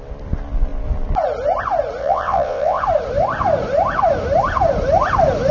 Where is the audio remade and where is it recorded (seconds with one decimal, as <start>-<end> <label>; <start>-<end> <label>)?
0.0-2.0 recorded; 2.0-2.8 remade; 2.8-5.5 recorded

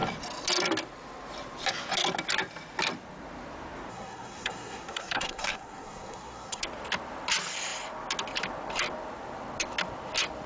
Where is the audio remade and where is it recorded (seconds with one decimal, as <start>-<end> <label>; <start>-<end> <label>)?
0.0-3.9 recorded; 3.9-6.6 remade; 6.6-10.5 recorded

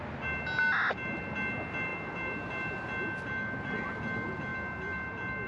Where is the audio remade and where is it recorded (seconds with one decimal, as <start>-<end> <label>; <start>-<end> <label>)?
0.0-5.5 recorded

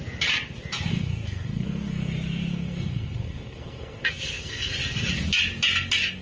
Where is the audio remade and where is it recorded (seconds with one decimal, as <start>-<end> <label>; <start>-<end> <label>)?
0.0-0.9 recorded; 0.9-2.1 remade; 2.1-2.5 recorded; 2.5-4.7 remade; 4.7-6.2 recorded

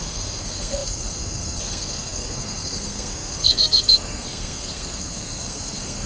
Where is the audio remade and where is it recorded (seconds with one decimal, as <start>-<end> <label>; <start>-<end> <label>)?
0.0-6.1 remade

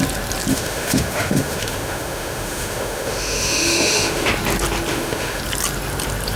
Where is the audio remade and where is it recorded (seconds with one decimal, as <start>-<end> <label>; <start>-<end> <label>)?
0.0-0.5 recorded; 0.5-4.3 remade; 4.3-4.9 recorded; 4.9-5.4 remade; 5.4-6.4 recorded

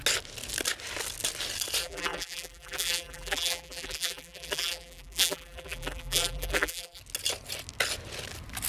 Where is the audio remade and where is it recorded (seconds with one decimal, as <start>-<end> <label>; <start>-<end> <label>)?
0.0-1.8 recorded; 1.8-7.0 remade; 7.0-8.7 recorded

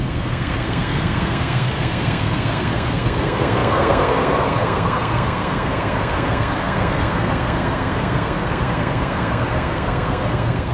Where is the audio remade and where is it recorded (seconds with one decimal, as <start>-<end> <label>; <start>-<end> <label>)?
0.0-10.7 remade